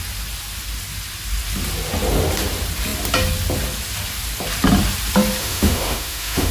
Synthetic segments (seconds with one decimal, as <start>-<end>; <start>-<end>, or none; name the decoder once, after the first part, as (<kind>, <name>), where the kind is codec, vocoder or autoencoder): 5.4-6.5 (autoencoder, DAC-VAE)